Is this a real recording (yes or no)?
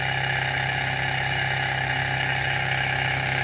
yes